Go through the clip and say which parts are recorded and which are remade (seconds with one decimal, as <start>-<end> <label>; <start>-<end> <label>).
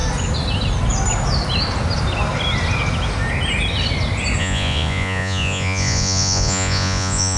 0.0-4.4 recorded; 4.4-7.4 remade